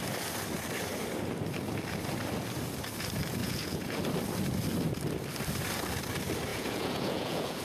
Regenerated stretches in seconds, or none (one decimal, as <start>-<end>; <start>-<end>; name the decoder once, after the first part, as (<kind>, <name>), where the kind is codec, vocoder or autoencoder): 3.4-4.0 (vocoder, Vocos); 6.5-7.6